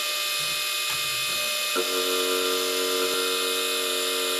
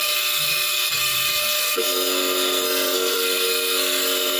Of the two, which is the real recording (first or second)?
first